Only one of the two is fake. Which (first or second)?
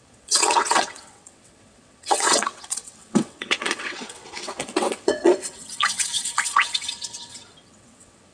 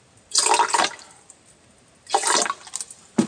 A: first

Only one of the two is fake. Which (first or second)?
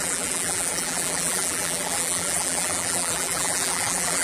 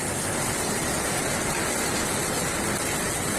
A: first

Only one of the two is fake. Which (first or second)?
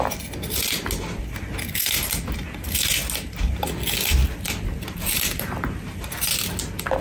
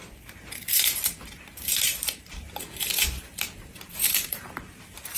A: second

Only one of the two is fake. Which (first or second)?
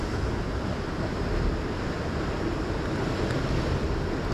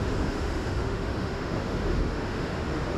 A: second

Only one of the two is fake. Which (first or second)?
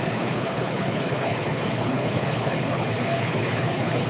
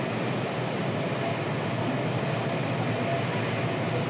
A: first